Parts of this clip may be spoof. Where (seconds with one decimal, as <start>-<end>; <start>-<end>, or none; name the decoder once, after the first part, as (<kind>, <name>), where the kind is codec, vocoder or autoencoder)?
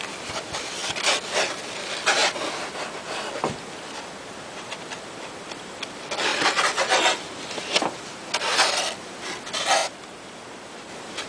0.0-2.2 (vocoder, BigVGAN v2); 5.5-6.3; 7.3-9.8; 10.9-11.3